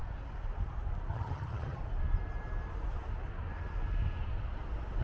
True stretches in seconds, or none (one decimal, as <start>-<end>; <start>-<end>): 0.0-1.1; 1.8-5.0